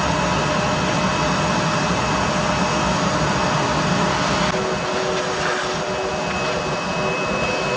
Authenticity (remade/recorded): recorded